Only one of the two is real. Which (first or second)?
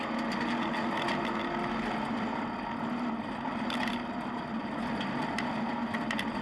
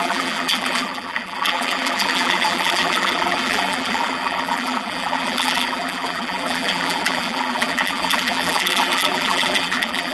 first